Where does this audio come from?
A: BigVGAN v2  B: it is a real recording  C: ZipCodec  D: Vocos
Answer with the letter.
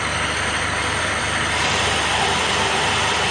A